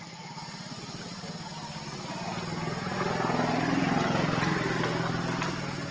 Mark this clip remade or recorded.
recorded